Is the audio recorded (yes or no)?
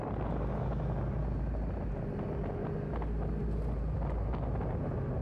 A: yes